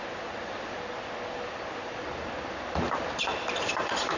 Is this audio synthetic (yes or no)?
yes